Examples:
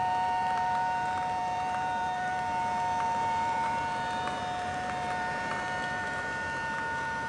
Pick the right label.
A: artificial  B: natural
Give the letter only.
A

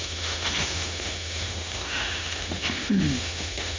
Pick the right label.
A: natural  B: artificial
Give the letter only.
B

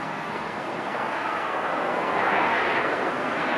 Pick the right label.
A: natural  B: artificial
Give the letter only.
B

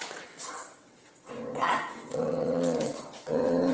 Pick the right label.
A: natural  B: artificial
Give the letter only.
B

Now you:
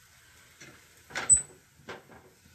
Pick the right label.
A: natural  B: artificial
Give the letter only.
A